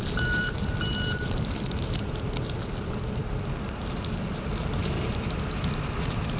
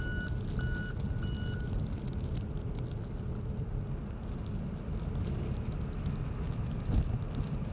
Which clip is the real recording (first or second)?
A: second